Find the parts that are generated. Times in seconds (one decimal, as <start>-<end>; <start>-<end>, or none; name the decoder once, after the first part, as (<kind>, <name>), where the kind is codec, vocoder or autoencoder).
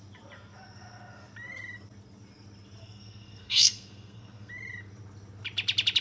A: 2.8-4.5 (codec, SNAC)